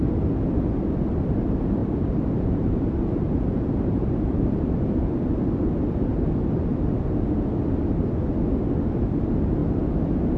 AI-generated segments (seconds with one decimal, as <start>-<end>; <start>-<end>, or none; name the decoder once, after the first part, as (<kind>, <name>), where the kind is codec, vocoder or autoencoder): 1.8-5.1 (vocoder, BigVGAN v2); 6.7-7.2